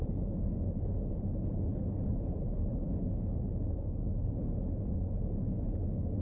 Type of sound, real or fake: fake